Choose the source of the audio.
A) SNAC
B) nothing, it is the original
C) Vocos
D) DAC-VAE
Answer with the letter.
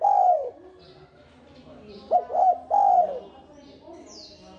B